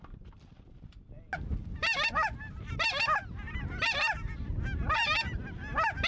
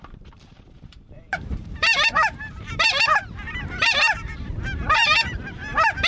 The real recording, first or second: first